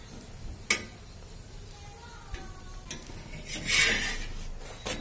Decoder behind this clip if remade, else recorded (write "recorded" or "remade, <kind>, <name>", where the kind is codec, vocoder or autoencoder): recorded